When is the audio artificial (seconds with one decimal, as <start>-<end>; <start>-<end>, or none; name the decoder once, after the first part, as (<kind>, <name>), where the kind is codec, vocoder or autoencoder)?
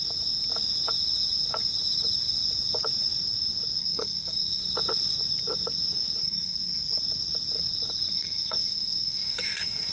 3.8-4.6 (codec, SNAC); 6.2-7.0; 8.1-9.9